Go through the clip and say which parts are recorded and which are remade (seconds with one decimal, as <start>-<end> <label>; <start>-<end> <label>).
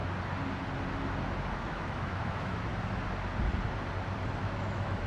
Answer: 0.0-1.5 recorded; 1.5-2.7 remade; 2.7-4.4 recorded; 4.4-5.1 remade